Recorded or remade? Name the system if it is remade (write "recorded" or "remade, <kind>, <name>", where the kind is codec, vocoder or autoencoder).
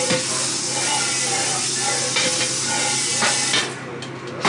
recorded